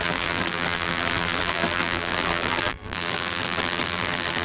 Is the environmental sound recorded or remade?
remade